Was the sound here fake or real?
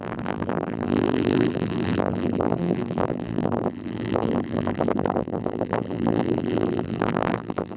fake